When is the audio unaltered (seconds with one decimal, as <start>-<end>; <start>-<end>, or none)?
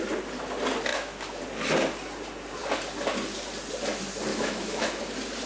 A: 0.0-0.9; 1.4-4.3; 5.0-5.5